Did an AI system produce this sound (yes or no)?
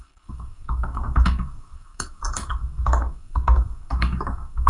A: yes